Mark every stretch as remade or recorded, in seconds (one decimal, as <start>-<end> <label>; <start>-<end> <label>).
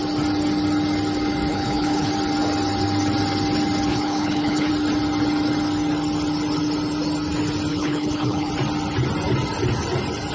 0.0-1.5 recorded; 1.5-2.1 remade; 2.1-3.9 recorded; 3.9-4.7 remade; 4.7-7.7 recorded; 7.7-8.5 remade; 8.5-10.3 recorded